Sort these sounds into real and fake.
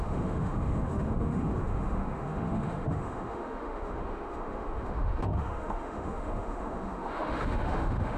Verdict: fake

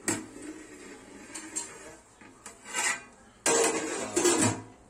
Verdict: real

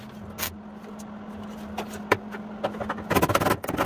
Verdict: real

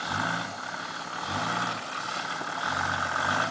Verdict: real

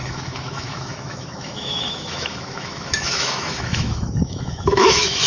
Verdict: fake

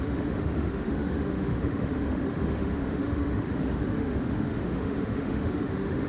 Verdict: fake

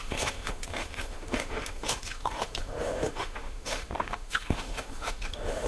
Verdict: fake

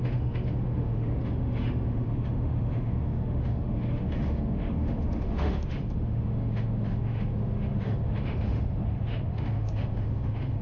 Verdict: fake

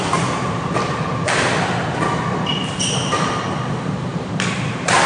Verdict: real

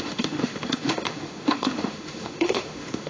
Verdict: fake